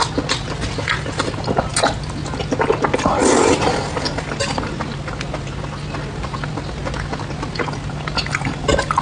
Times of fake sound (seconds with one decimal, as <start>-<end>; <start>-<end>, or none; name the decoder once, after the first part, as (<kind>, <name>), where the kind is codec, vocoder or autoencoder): none